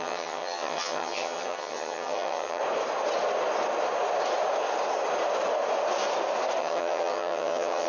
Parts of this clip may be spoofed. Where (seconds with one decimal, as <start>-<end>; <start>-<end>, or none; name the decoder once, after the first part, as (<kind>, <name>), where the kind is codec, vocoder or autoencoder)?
0.0-2.6 (vocoder, HiFi-GAN); 6.6-7.9